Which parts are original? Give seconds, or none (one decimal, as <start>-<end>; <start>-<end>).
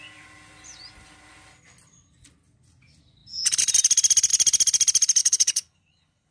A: 0.0-5.2